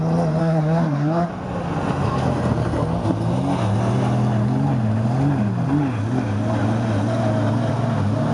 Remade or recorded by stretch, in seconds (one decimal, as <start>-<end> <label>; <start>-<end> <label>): 0.0-0.4 recorded; 0.4-1.3 remade; 1.3-8.3 recorded